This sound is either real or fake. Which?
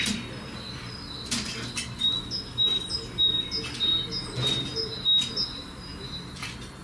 real